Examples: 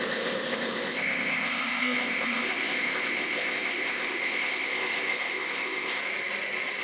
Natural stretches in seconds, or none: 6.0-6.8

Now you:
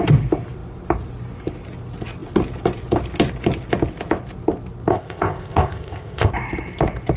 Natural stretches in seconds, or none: 0.0-4.9; 6.3-7.2

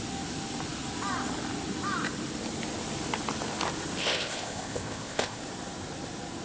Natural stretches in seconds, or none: 0.0-4.0; 5.4-6.4

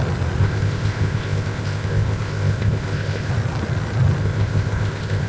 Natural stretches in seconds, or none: 0.0-0.4; 3.3-4.2

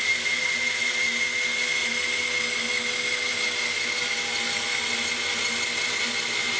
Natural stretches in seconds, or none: 0.0-6.6

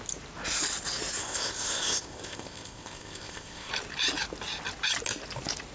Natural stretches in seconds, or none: 0.0-1.2; 3.7-5.7